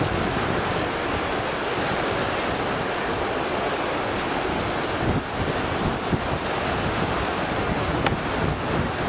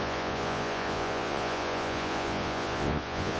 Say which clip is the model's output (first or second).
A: second